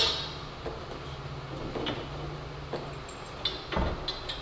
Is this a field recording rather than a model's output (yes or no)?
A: yes